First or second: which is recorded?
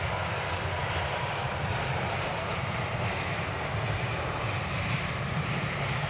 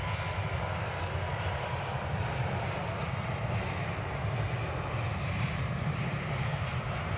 second